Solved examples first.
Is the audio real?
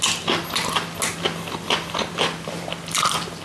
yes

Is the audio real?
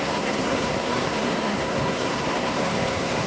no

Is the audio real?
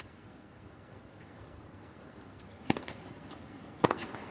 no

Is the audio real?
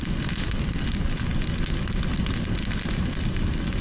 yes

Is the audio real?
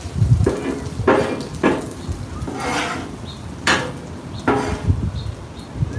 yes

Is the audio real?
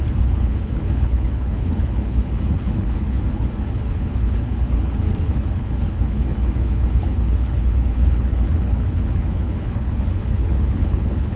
no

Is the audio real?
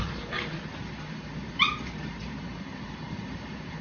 no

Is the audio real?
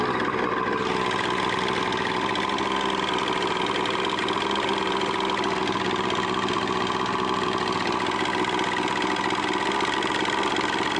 yes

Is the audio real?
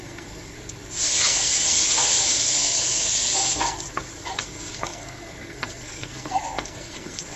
no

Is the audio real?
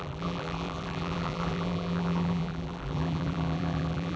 no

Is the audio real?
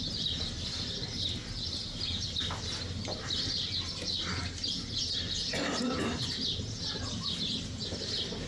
yes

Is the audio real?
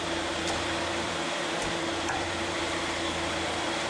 no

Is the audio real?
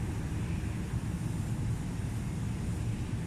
yes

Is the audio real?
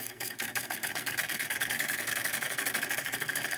no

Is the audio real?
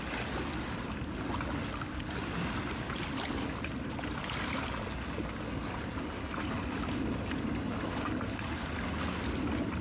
yes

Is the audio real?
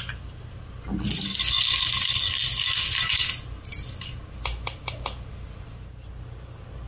yes